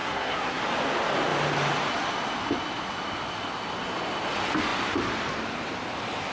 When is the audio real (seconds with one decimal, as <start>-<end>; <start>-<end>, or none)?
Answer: 0.6-6.3